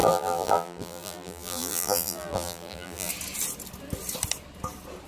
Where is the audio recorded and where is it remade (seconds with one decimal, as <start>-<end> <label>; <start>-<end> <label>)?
0.0-3.1 remade; 3.1-5.1 recorded